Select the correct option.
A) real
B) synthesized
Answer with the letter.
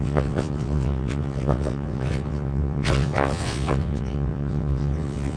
B